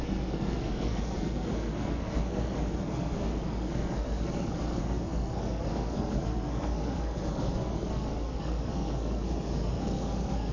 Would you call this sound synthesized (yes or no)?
yes